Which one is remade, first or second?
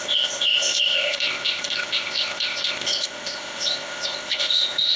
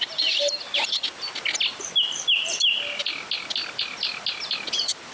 first